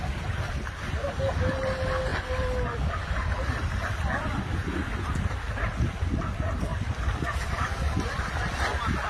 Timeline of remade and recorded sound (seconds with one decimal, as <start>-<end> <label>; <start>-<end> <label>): 0.0-2.1 recorded; 2.1-4.5 remade; 4.5-6.7 recorded; 6.7-8.5 remade; 8.5-9.1 recorded